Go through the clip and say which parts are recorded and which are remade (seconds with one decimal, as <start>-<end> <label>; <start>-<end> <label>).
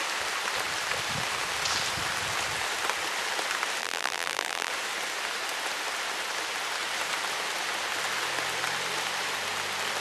0.0-3.8 recorded; 3.8-4.7 remade; 4.7-10.0 recorded